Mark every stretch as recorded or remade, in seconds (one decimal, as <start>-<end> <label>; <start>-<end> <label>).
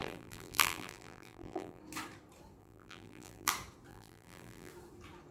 0.0-1.8 remade; 1.8-2.6 recorded; 2.6-3.5 remade; 3.5-3.9 recorded; 3.9-4.7 remade; 4.7-5.3 recorded